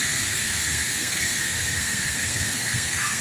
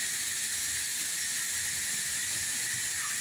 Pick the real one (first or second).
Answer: second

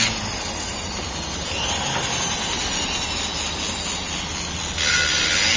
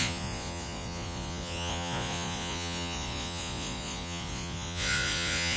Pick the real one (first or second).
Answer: first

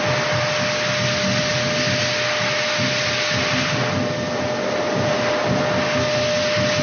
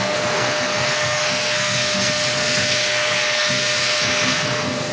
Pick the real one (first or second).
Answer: first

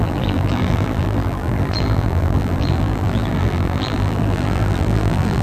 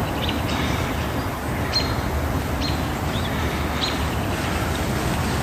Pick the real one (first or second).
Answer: second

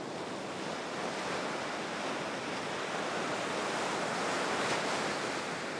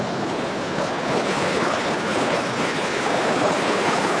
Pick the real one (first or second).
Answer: first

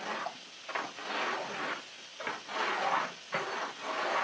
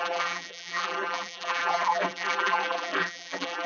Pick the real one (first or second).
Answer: first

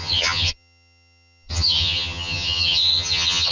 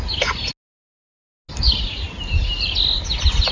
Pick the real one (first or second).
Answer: second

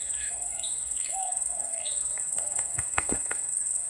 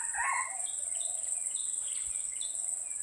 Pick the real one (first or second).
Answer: second